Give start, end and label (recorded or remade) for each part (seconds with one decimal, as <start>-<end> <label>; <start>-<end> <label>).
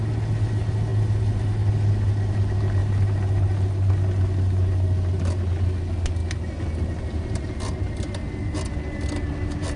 0.0-9.8 recorded